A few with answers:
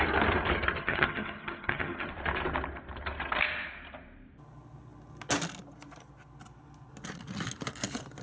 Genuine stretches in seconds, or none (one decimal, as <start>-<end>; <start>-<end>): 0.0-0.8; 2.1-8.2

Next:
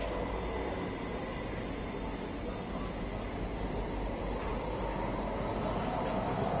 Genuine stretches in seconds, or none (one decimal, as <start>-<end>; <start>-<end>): 0.0-6.6

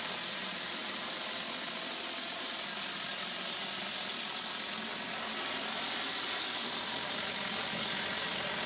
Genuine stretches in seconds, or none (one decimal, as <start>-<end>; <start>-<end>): 0.0-8.7

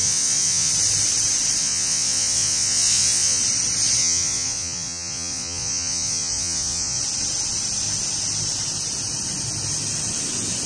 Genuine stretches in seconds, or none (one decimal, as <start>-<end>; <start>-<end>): 0.7-1.6; 3.4-4.0; 7.0-10.7

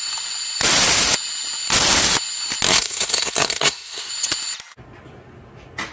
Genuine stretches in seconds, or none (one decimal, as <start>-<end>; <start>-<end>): 0.0-2.7; 4.1-5.9

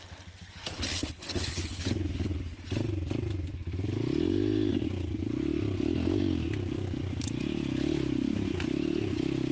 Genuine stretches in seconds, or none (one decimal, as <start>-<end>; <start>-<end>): 0.0-0.9; 2.6-9.5

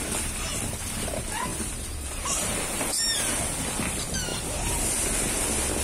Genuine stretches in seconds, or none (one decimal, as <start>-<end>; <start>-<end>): 0.0-1.5; 3.2-4.3; 4.8-5.8